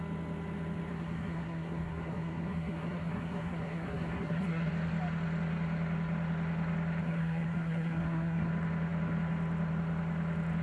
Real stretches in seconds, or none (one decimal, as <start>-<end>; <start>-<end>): 0.0-0.9; 4.7-7.0; 8.5-10.6

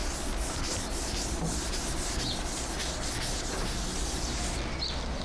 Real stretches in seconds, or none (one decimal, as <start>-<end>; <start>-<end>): 0.0-5.2